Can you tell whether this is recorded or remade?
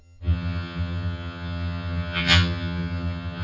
remade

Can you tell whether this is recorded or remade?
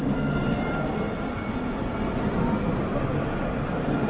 recorded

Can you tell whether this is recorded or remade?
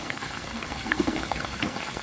remade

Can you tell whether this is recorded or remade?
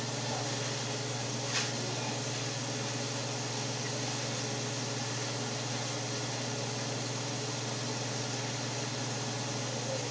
recorded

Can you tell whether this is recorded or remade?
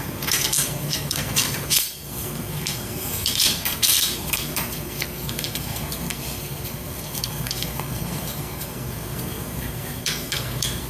remade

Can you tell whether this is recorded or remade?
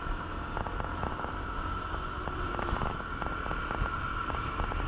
recorded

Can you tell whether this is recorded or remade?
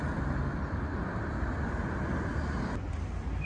recorded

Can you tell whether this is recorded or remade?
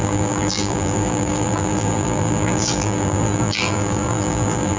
remade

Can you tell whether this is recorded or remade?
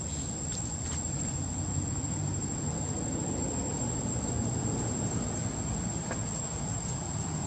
recorded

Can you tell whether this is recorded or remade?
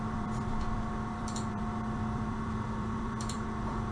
remade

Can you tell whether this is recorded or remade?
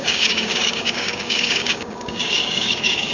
remade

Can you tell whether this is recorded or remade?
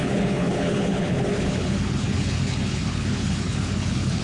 remade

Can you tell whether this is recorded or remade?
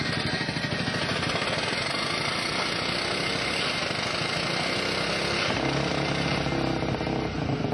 recorded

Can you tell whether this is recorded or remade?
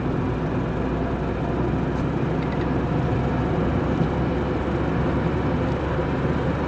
recorded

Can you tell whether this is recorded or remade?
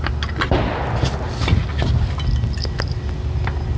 recorded